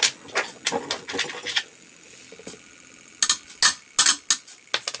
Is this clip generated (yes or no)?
no